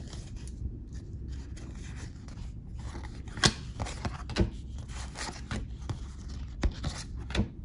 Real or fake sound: real